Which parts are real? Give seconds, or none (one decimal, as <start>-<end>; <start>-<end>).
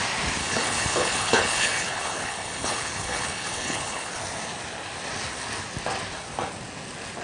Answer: 0.0-0.4; 4.1-7.2